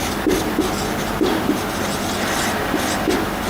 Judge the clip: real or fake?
real